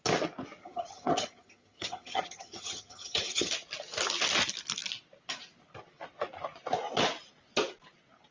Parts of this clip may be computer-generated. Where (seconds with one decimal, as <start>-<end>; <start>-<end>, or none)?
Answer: 0.6-3.5